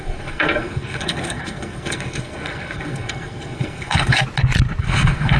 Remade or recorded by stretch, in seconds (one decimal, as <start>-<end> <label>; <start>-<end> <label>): 0.0-4.2 remade; 4.2-4.8 recorded; 4.8-5.4 remade